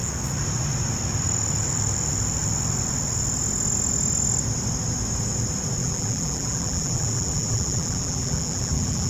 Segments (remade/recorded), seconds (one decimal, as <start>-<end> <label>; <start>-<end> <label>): 0.0-5.8 recorded; 5.8-9.1 remade

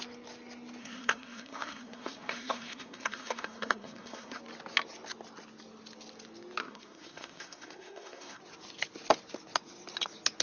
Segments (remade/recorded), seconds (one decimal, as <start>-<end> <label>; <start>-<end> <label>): 0.0-0.8 recorded; 0.8-4.4 remade; 4.4-6.6 recorded; 6.6-8.4 remade; 8.4-10.4 recorded

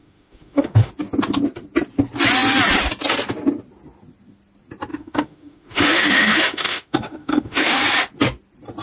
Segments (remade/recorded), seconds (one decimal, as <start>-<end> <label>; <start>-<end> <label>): 0.0-0.9 remade; 0.9-4.9 recorded; 4.9-7.8 remade; 7.8-8.8 recorded

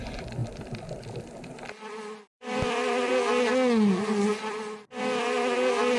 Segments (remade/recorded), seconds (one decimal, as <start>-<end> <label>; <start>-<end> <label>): 0.0-0.4 recorded; 0.4-3.1 remade; 3.1-4.3 recorded; 4.3-5.0 remade; 5.0-6.0 recorded

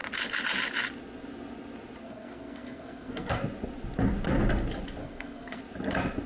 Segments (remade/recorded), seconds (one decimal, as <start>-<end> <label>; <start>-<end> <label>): 0.0-2.0 recorded; 2.0-3.4 remade; 3.4-5.0 recorded; 5.0-5.6 remade; 5.6-6.3 recorded